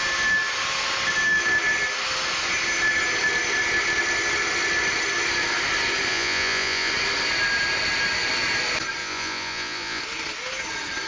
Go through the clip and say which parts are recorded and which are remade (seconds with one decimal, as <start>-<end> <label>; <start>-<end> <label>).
0.0-6.1 recorded; 6.1-6.9 remade; 6.9-9.0 recorded; 9.0-10.0 remade; 10.0-11.1 recorded